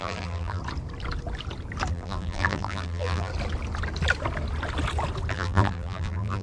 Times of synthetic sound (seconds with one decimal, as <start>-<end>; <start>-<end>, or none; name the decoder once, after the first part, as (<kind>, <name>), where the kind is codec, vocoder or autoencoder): 0.0-0.6 (vocoder, BigVGAN v2); 1.9-3.3; 5.3-6.4